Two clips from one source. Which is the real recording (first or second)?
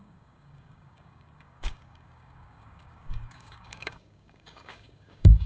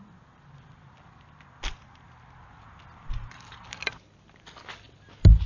second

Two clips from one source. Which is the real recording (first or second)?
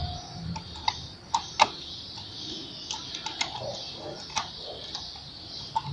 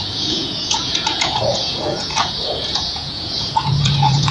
first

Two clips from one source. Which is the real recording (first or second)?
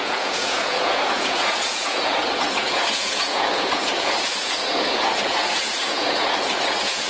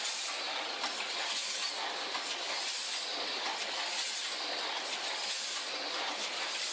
second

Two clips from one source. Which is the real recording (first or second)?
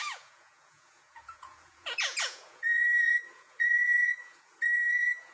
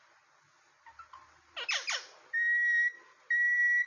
second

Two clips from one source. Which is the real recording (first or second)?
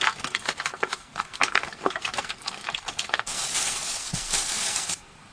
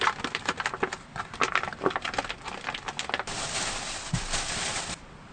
second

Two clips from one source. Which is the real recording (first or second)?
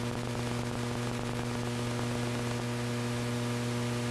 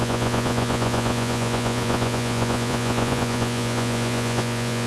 first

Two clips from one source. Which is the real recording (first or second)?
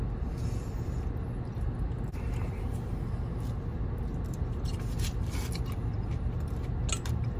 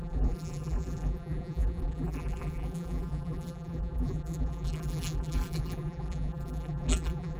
first